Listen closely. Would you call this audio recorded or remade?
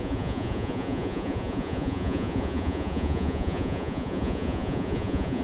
remade